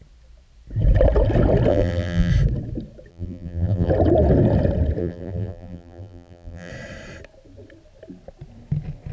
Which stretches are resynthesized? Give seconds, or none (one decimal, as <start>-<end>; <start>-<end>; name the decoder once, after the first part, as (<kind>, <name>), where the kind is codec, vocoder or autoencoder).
1.7-2.3 (vocoder, BigVGAN v2); 3.1-3.9; 5.0-6.7